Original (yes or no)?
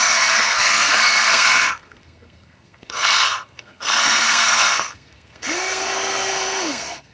no